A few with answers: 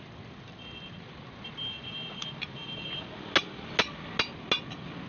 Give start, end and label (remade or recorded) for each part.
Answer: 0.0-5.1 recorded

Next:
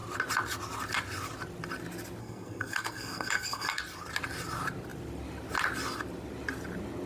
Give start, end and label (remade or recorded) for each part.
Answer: 0.0-2.2 recorded; 2.2-3.8 remade; 3.8-7.1 recorded

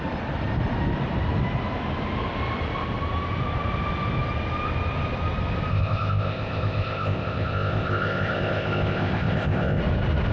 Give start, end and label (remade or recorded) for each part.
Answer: 0.0-5.7 recorded; 5.7-9.8 remade; 9.8-10.3 recorded

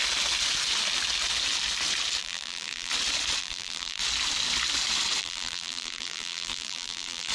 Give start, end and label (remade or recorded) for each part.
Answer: 0.0-2.2 recorded; 2.2-2.9 remade; 2.9-3.4 recorded; 3.4-4.0 remade; 4.0-5.2 recorded; 5.2-7.3 remade